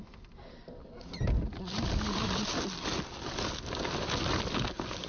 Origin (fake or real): real